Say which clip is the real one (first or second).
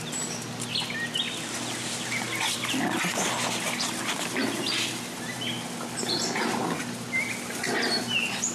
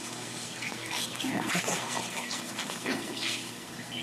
first